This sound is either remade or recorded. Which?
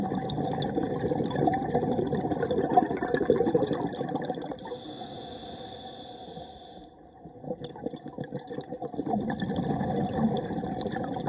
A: recorded